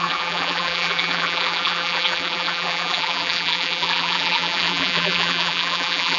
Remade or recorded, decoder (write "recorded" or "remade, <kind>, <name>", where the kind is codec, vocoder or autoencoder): remade, vocoder, BigVGAN v2